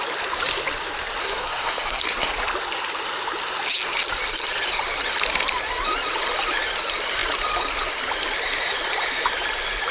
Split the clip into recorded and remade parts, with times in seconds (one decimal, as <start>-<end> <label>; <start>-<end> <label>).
0.0-1.2 recorded; 1.2-2.3 remade; 2.3-9.9 recorded